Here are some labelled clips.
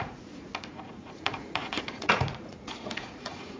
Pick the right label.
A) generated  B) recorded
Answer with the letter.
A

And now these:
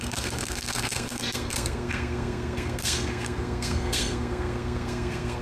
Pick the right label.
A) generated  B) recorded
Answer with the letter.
A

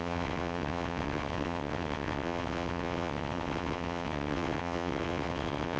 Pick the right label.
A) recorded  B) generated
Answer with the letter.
B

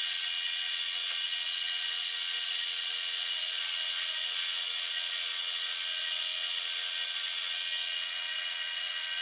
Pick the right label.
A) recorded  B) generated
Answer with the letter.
B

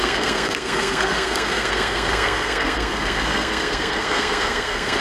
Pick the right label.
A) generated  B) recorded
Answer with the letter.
A